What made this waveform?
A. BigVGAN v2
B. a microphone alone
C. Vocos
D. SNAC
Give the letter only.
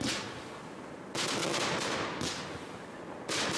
B